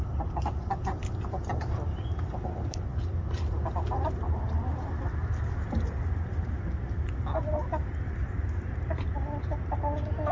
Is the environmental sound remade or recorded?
recorded